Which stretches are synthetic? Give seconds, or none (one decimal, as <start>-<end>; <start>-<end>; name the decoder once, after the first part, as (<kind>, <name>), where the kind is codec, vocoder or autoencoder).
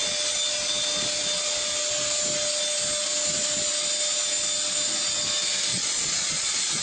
5.7-6.8 (vocoder, Vocos)